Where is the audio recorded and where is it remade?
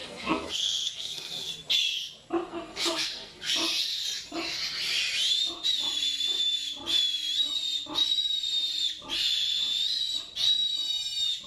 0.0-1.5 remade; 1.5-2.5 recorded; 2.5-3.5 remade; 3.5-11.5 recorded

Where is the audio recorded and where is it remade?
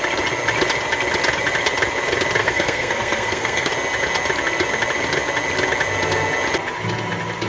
0.0-2.4 recorded; 2.4-3.7 remade; 3.7-7.5 recorded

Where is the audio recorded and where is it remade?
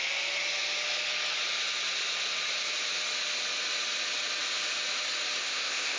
0.0-5.4 recorded; 5.4-6.0 remade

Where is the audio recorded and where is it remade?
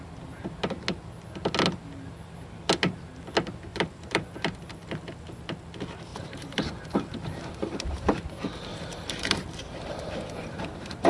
0.0-3.7 recorded; 3.7-5.0 remade; 5.0-6.1 recorded; 6.1-6.7 remade; 6.7-7.6 recorded; 7.6-8.2 remade; 8.2-8.7 recorded; 8.7-11.1 remade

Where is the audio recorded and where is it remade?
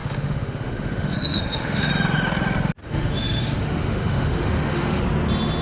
0.0-1.9 remade; 1.9-2.8 recorded; 2.8-5.0 remade; 5.0-5.6 recorded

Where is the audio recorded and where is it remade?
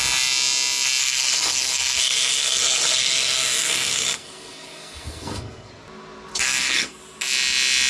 0.0-1.0 recorded; 1.0-5.7 remade; 5.7-6.3 recorded; 6.3-7.0 remade; 7.0-7.9 recorded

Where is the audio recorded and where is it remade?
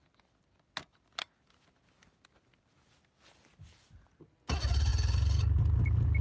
0.0-6.2 recorded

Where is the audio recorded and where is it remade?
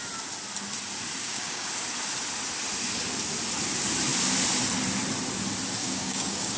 0.0-1.2 recorded; 1.2-1.7 remade; 1.7-5.8 recorded; 5.8-6.6 remade